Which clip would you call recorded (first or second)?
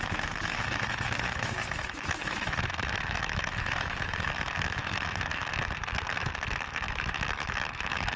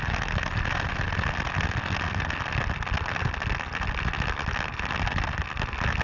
second